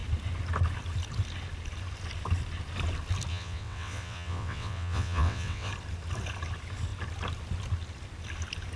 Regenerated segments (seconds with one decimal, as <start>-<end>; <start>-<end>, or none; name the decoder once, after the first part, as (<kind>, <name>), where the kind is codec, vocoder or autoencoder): 3.3-5.7 (vocoder, WaveNeXt)